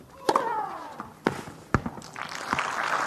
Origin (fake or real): real